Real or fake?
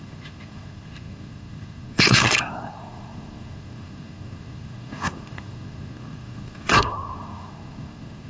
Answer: fake